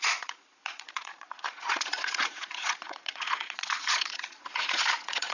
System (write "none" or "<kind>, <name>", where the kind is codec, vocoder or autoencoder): vocoder, Vocos